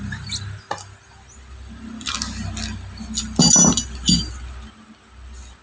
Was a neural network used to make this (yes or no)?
no